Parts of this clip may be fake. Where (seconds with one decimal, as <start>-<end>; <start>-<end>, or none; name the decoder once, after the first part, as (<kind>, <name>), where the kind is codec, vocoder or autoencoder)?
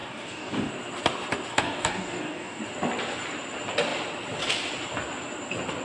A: 0.0-0.7 (codec, DAC); 1.5-2.6